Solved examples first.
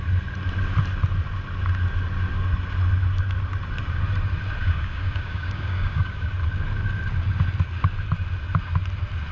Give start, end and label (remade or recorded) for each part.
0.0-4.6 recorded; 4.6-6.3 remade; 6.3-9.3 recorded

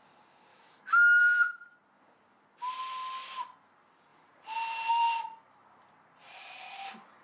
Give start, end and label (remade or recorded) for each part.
0.0-0.5 recorded; 0.5-1.2 remade; 1.2-7.2 recorded

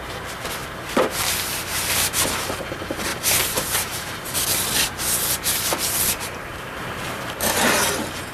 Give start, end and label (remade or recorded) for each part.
0.0-0.6 recorded; 0.6-1.2 remade; 1.2-3.1 recorded; 3.1-7.9 remade; 7.9-8.3 recorded

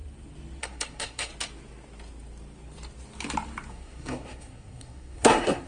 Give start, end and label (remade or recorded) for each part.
0.0-0.6 recorded; 0.6-1.3 remade; 1.3-3.7 recorded; 3.7-5.7 remade

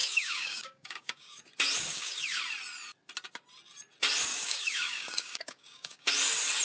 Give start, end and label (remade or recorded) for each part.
0.0-1.5 remade; 1.5-1.9 recorded; 1.9-2.4 remade; 2.4-4.3 recorded; 4.3-6.1 remade; 6.1-6.6 recorded